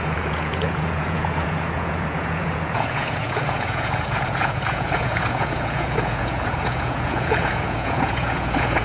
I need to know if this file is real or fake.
fake